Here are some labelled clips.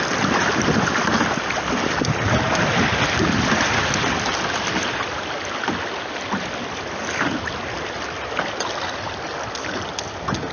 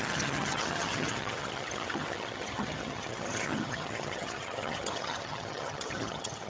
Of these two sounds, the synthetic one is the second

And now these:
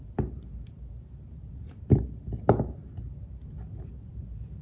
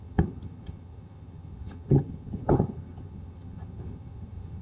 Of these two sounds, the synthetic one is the second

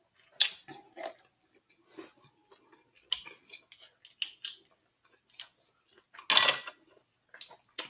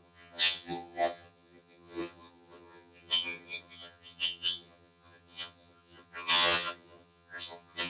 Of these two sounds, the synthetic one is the second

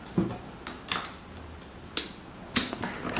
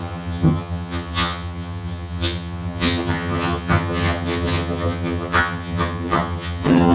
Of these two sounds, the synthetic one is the second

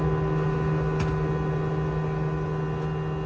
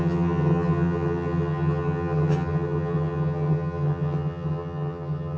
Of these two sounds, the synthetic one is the second